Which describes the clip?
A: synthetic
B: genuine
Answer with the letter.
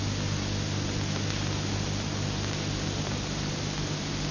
B